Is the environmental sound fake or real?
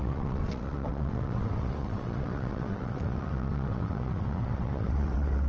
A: fake